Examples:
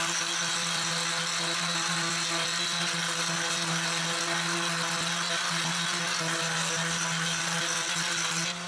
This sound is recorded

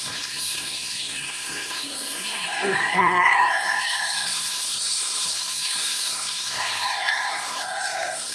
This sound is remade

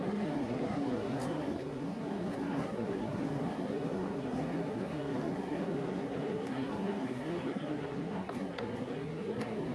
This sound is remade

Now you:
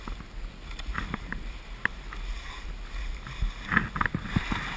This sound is recorded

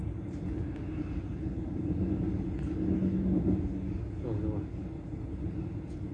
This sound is recorded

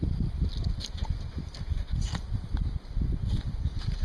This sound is recorded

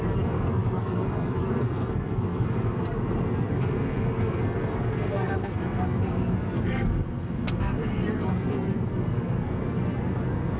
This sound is remade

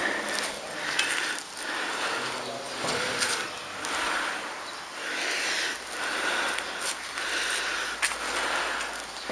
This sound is recorded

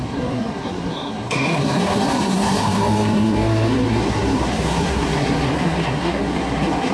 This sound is remade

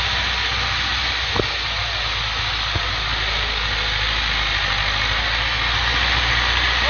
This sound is recorded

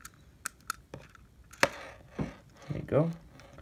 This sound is recorded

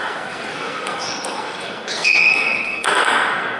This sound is remade